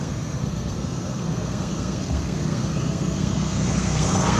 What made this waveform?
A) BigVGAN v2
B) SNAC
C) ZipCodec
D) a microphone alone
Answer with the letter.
B